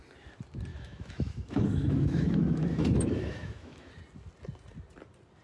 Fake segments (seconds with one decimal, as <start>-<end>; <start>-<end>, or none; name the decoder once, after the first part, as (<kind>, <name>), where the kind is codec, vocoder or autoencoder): 0.7-3.9 (autoencoder, DAC-VAE)

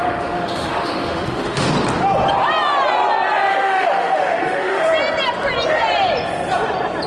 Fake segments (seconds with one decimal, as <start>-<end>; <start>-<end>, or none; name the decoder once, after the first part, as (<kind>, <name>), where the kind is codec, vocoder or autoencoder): 0.0-1.7 (autoencoder, DAC-VAE); 3.5-4.9

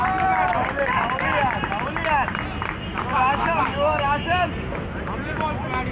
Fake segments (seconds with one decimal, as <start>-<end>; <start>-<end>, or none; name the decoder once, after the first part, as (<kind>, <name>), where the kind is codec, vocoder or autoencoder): 3.1-4.5 (autoencoder, DAC-VAE)

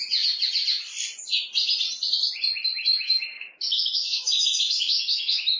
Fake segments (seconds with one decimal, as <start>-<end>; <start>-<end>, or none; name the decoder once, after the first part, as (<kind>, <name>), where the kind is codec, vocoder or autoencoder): 2.9-5.6 (autoencoder, DAC-VAE)

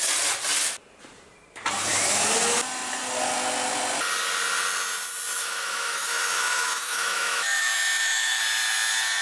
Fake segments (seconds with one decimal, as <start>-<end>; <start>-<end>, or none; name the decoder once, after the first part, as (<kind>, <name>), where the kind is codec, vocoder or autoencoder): 5.4-8.4 (autoencoder, DAC-VAE)

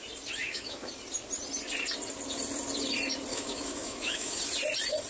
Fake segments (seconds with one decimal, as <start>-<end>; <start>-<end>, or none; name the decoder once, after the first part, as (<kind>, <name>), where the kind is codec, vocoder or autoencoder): 0.4-0.9 (autoencoder, DAC-VAE); 3.3-4.4

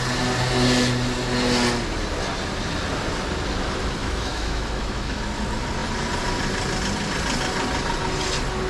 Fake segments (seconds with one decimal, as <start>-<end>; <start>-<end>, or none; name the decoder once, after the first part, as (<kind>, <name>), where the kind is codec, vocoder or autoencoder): 4.0-5.2 (autoencoder, DAC-VAE)

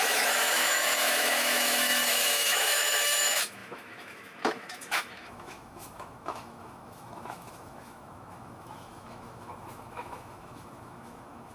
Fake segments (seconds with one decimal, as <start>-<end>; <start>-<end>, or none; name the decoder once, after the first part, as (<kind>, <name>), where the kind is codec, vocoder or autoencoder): 0.0-11.5 (autoencoder, DAC-VAE)